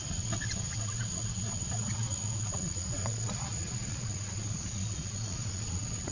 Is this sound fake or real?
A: fake